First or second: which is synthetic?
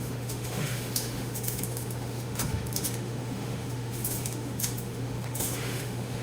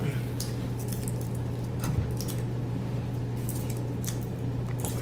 first